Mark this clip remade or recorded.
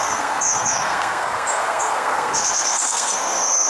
remade